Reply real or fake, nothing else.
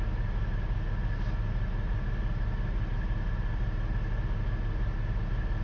real